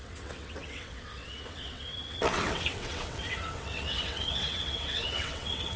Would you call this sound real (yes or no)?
no